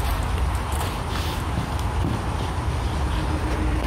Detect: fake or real real